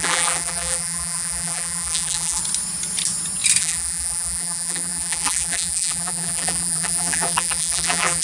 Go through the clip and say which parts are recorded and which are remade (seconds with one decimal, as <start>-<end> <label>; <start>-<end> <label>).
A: 0.0-2.4 remade; 2.4-3.6 recorded; 3.6-8.2 remade